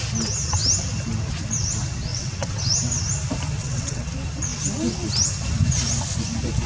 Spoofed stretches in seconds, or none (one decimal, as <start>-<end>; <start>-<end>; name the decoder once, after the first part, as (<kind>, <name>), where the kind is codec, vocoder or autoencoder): 2.1-2.6 (vocoder, WaveNeXt); 3.6-4.1